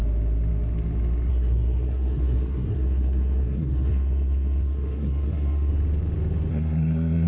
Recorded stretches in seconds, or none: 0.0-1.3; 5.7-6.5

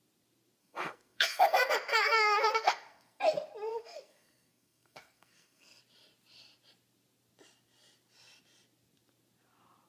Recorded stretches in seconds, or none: 0.0-0.6; 3.2-3.7; 5.8-9.9